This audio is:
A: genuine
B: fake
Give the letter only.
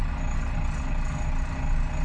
A